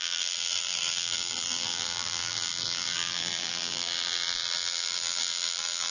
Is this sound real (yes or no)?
no